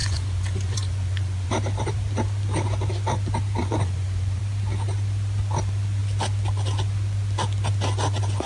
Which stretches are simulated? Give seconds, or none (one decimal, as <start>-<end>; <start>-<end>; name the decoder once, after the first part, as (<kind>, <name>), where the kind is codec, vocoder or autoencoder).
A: 0.0-1.5 (vocoder, Vocos); 3.6-4.4